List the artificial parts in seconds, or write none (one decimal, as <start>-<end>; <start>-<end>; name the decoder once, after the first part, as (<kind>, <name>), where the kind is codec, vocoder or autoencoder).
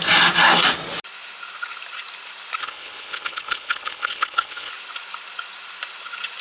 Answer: 2.6-4.7 (codec, HILCodec)